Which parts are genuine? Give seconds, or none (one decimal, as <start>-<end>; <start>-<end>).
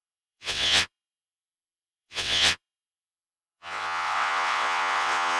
none